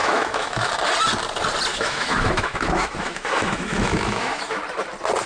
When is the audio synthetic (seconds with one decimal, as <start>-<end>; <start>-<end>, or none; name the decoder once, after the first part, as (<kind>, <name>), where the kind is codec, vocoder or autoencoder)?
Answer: 0.0-0.7 (autoencoder, DAC-VAE); 1.7-4.6